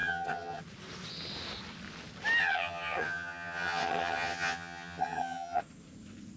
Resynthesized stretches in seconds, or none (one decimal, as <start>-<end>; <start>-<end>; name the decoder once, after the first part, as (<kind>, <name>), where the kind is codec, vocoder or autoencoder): 0.0-0.6 (vocoder, HiFi-GAN); 2.4-5.6